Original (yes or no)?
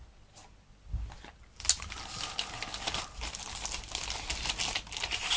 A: yes